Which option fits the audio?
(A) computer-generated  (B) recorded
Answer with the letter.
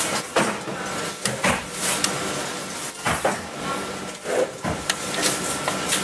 B